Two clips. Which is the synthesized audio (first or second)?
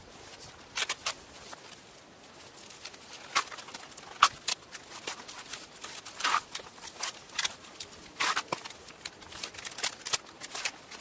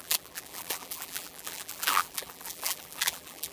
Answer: second